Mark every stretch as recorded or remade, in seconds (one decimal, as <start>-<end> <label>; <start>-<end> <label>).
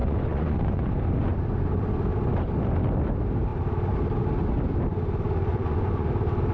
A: 0.0-0.9 remade; 0.9-5.5 recorded; 5.5-6.1 remade; 6.1-6.5 recorded